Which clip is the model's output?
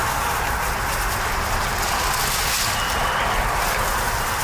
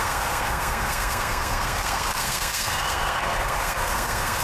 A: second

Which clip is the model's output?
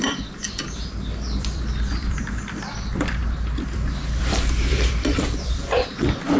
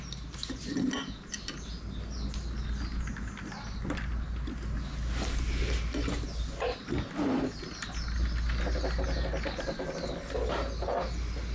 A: first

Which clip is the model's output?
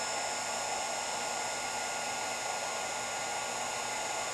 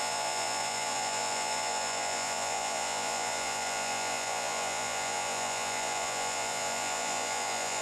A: second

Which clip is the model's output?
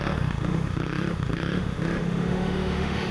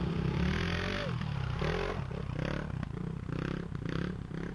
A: first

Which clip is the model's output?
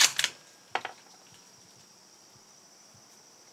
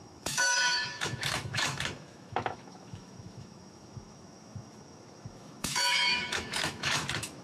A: second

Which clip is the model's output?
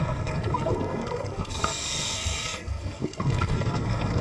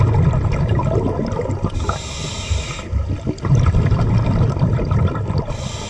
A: first